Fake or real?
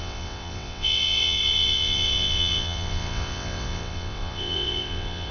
fake